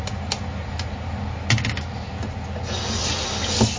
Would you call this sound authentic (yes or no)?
yes